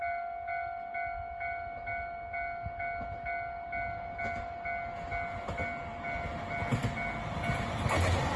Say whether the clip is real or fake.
real